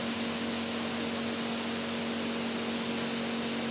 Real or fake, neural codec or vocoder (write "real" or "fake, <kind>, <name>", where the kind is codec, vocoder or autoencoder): real